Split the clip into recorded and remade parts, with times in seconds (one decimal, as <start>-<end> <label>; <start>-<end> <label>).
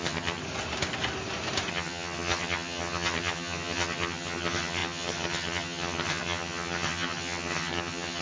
0.0-0.4 remade; 0.4-1.7 recorded; 1.7-8.2 remade